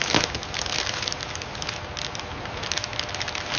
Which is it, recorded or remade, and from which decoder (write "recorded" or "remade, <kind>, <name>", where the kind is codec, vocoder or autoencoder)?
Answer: recorded